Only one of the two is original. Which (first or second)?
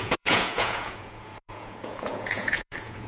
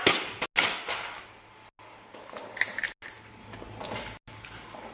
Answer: second